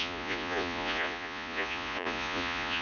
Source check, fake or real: fake